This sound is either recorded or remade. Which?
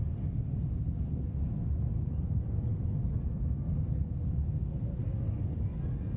recorded